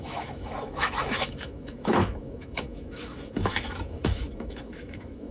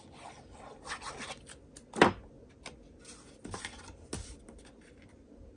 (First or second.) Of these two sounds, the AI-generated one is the first